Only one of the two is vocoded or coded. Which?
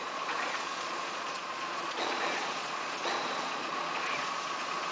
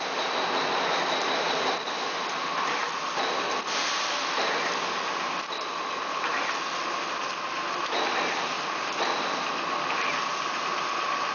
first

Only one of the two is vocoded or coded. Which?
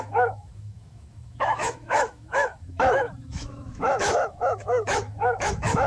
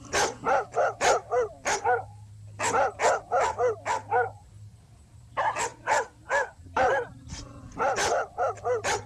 first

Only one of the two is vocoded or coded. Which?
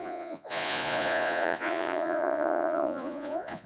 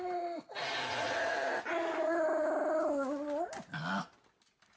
first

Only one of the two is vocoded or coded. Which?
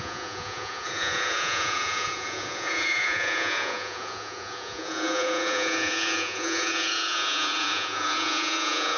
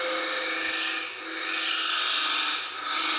first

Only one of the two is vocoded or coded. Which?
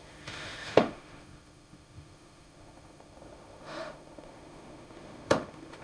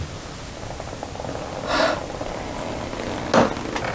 first